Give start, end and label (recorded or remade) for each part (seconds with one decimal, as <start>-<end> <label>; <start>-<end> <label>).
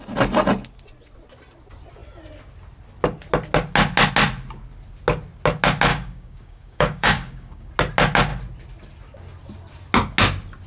0.0-5.9 recorded; 5.9-7.7 remade; 7.7-10.7 recorded